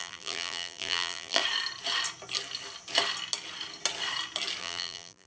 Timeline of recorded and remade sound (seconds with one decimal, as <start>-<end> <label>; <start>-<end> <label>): 0.0-1.4 remade; 1.4-4.6 recorded; 4.6-5.3 remade